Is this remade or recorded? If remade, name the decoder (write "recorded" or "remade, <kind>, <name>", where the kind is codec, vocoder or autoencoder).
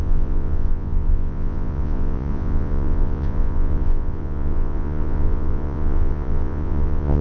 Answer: remade, vocoder, Vocos